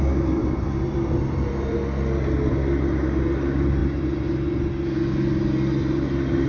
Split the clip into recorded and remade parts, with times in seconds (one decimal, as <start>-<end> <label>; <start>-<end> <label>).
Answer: 0.0-0.4 recorded; 0.4-1.8 remade; 1.8-6.5 recorded